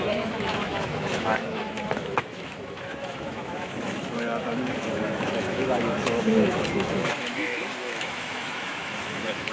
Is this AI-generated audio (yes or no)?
yes